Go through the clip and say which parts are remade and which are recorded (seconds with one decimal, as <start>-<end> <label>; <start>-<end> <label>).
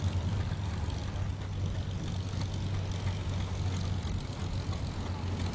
0.0-5.5 recorded